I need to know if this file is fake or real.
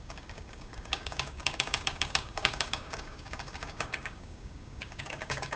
fake